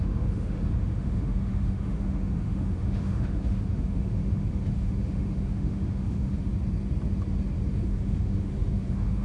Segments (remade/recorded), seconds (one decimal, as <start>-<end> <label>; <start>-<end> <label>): 0.0-6.5 remade; 6.5-7.7 recorded; 7.7-9.2 remade